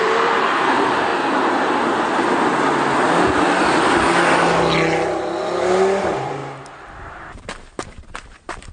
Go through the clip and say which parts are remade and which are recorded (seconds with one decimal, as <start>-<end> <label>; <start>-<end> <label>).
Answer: 0.0-1.1 remade; 1.1-6.0 recorded; 6.0-6.4 remade; 6.4-7.0 recorded; 7.0-8.7 remade